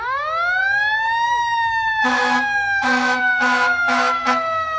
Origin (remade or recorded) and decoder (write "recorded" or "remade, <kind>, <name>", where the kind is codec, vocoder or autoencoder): remade, autoencoder, DAC-VAE